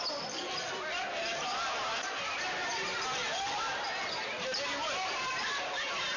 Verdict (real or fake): fake